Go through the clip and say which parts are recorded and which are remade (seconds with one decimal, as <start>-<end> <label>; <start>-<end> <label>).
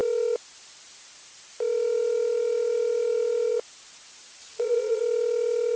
0.0-4.4 recorded; 4.4-5.0 remade; 5.0-5.8 recorded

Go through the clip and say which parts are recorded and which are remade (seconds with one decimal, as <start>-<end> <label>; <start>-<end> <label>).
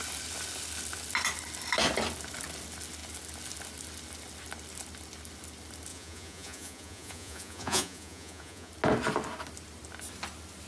0.0-5.9 recorded; 5.9-8.7 remade; 8.7-10.7 recorded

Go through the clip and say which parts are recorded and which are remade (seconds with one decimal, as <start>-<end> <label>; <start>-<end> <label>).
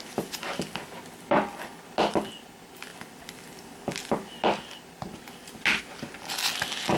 0.0-7.0 recorded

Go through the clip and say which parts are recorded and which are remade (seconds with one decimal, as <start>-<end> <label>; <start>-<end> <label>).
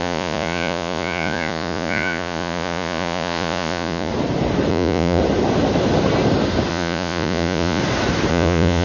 0.0-4.1 remade; 4.1-4.7 recorded; 4.7-5.2 remade; 5.2-6.7 recorded; 6.7-7.8 remade; 7.8-8.3 recorded; 8.3-8.8 remade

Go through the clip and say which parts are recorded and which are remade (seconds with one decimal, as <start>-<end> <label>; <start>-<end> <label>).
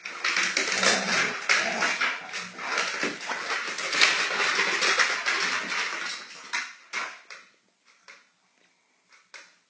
0.0-9.7 recorded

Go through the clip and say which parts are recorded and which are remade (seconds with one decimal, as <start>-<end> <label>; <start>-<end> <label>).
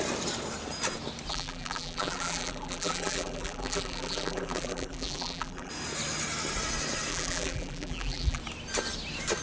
0.0-1.3 recorded; 1.3-5.7 remade; 5.7-7.1 recorded; 7.1-8.4 remade; 8.4-9.4 recorded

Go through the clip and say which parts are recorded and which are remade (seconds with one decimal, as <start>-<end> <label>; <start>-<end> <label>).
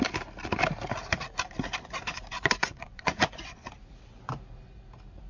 0.0-2.1 recorded; 2.1-3.7 remade; 3.7-5.3 recorded